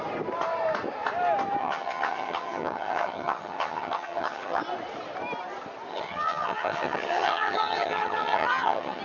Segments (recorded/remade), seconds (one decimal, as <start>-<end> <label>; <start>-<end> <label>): 0.0-1.6 recorded; 1.6-4.6 remade; 4.6-5.9 recorded; 5.9-9.0 remade